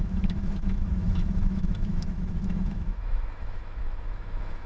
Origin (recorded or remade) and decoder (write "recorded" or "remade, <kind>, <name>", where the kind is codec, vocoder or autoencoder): remade, autoencoder, DAC-VAE